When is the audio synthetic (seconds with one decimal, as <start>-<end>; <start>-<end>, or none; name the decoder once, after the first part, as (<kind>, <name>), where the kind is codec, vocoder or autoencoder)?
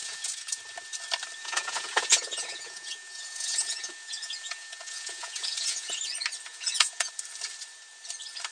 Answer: 0.0-0.6 (vocoder, Vocos); 1.4-6.0; 6.5-7.1